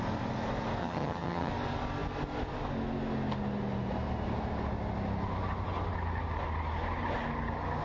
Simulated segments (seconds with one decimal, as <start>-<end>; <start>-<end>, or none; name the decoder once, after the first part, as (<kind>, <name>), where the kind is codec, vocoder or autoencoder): 0.8-1.5 (vocoder, HiFi-GAN)